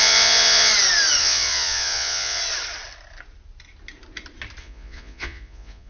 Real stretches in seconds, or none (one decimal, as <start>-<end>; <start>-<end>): 0.7-1.2; 2.4-4.6